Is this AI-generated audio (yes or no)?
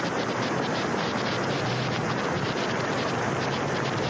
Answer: no